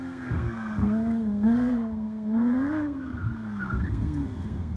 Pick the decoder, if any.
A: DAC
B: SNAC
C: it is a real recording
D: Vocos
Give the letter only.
B